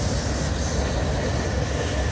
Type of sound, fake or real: real